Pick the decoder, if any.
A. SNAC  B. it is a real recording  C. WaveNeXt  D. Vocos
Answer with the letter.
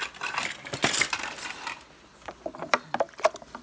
B